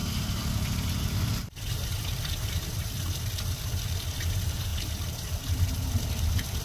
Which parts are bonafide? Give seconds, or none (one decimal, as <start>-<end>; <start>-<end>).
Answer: 0.0-1.5

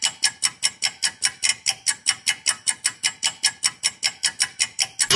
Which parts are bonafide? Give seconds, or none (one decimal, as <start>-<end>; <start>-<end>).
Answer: 0.0-5.2

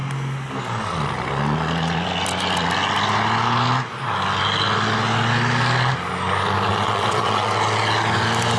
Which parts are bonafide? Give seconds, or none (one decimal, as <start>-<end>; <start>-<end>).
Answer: 0.0-6.7; 7.5-8.6

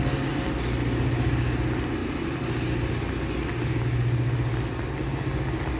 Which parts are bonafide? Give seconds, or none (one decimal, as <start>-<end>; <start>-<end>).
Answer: 0.0-5.8

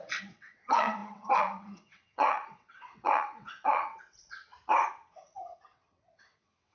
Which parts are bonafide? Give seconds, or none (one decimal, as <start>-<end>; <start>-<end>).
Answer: 4.4-5.0

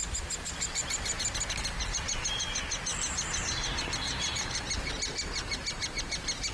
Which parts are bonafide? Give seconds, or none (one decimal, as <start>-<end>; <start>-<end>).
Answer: 0.0-6.5